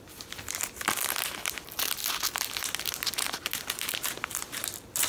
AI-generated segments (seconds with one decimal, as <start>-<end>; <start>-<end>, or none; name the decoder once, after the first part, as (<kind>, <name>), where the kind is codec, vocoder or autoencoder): none